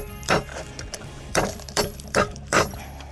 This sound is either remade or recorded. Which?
remade